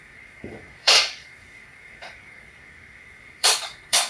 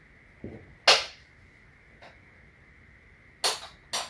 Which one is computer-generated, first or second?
first